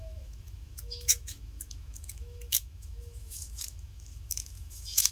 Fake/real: fake